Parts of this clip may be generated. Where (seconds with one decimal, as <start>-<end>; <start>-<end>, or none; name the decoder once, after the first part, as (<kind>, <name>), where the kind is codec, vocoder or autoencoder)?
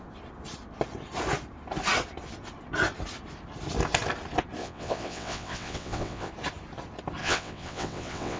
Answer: 4.6-6.3 (vocoder, WaveNeXt); 7.2-8.4